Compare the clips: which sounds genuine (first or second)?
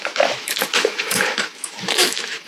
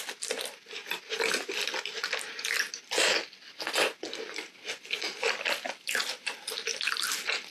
second